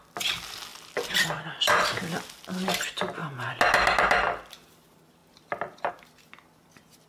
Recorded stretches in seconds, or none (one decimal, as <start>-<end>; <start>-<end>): 0.0-0.7; 1.8-5.2; 5.9-7.1